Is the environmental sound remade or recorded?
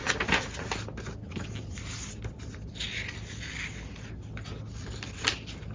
recorded